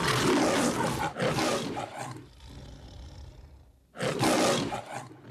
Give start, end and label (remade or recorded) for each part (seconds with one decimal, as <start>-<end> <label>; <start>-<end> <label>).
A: 0.0-5.3 recorded